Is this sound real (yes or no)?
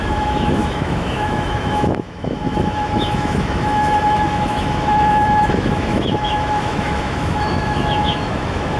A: no